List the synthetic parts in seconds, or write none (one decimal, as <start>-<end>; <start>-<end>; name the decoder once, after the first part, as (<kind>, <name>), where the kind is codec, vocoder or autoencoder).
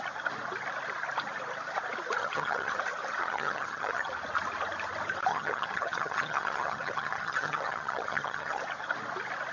2.2-2.8 (vocoder, HiFi-GAN); 3.2-4.1; 5.3-8.6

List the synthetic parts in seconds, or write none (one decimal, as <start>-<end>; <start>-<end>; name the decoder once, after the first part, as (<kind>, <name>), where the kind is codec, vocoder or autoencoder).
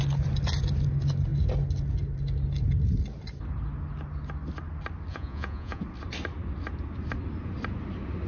5.1-5.8 (vocoder, Vocos)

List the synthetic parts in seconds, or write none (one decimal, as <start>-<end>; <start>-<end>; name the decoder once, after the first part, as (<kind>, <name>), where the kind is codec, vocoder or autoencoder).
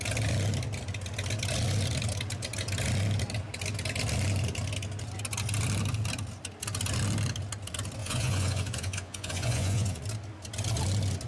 8.0-10.0 (vocoder, Vocos)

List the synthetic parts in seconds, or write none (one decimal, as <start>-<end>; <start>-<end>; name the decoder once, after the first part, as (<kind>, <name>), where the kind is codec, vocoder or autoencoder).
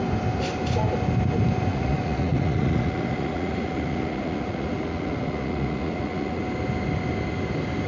1.7-6.4 (vocoder, Vocos)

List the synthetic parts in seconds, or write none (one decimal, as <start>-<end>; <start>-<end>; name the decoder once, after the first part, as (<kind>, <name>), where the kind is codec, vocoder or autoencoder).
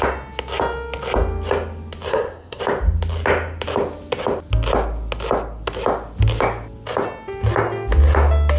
2.1-2.6 (codec, SNAC)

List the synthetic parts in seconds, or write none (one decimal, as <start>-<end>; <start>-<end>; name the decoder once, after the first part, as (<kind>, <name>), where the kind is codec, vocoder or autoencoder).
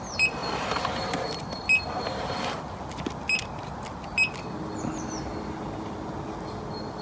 none